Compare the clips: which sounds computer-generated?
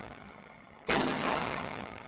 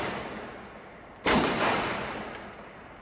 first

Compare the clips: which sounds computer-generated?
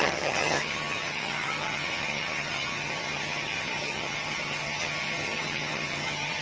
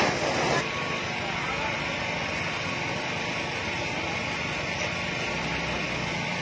first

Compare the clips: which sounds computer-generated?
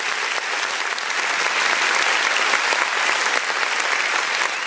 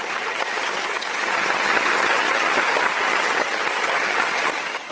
second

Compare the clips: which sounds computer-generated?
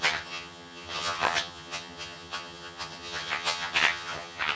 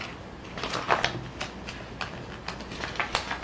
first